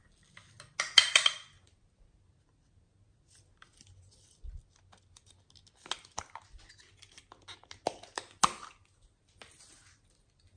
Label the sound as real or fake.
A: real